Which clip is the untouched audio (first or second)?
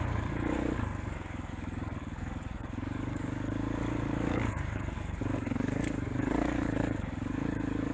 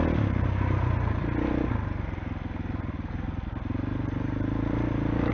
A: second